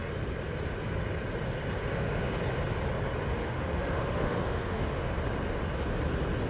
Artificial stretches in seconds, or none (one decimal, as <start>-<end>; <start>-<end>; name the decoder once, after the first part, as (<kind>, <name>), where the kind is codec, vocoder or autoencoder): 1.8-2.4 (autoencoder, DAC-VAE); 3.4-5.1